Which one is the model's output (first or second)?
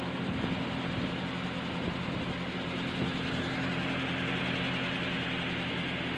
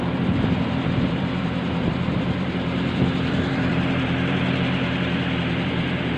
second